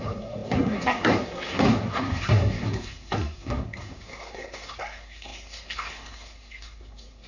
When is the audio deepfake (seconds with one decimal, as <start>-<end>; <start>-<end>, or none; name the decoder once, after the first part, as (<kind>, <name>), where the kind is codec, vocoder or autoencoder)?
0.0-7.3 (codec, SNAC)

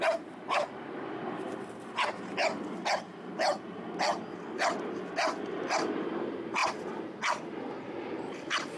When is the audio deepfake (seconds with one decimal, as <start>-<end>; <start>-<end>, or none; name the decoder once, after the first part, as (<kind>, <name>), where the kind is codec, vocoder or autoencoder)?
none

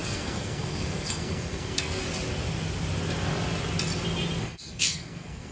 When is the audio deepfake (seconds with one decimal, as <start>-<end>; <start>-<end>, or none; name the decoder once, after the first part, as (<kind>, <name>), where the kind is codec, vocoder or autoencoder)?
0.0-2.0 (codec, SNAC); 4.4-5.5

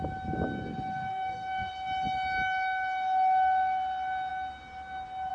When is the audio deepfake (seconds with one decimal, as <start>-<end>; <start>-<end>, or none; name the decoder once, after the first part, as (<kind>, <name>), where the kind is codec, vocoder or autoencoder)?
1.1-1.7 (codec, SNAC)

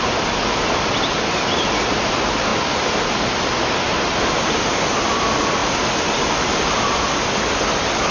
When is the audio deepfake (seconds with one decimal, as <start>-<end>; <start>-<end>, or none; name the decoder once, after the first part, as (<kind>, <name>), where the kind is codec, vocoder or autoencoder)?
none